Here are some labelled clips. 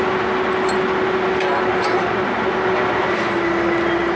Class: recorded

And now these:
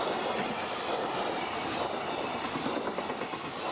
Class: recorded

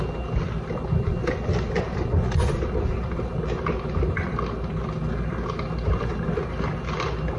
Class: recorded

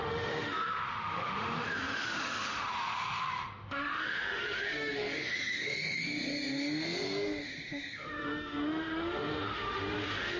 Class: remade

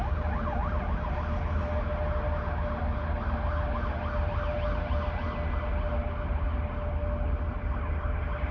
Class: recorded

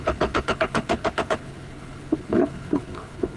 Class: remade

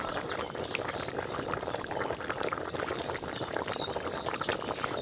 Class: recorded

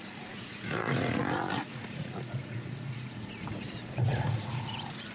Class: remade